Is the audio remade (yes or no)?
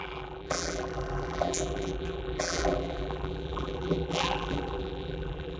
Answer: yes